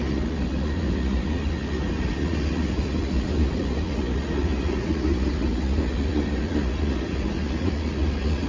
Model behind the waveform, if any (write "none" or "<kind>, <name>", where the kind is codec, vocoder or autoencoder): vocoder, Vocos